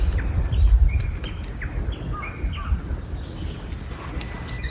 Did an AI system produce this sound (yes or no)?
no